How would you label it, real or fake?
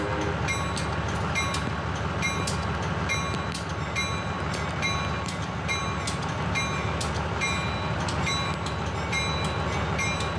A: real